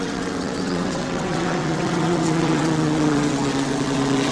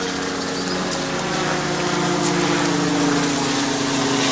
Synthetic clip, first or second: first